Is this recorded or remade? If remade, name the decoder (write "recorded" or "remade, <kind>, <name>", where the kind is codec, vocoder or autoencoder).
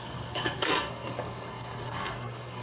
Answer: remade, codec, SNAC